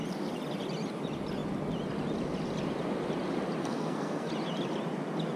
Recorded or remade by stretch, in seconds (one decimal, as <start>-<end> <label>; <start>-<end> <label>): 0.0-3.6 recorded; 3.6-4.3 remade; 4.3-5.4 recorded